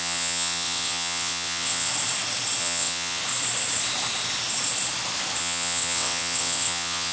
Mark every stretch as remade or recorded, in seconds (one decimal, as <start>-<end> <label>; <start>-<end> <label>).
0.0-1.9 remade; 1.9-2.6 recorded; 2.6-3.2 remade; 3.2-5.4 recorded; 5.4-7.1 remade